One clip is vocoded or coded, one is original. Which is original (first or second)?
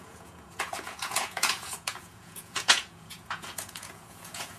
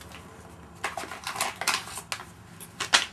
second